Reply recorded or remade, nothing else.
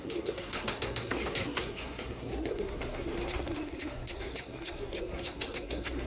remade